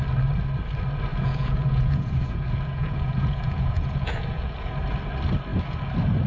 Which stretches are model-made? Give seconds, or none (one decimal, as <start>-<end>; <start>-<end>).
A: 1.1-4.7